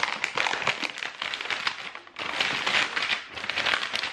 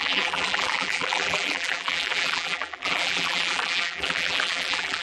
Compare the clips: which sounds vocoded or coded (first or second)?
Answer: second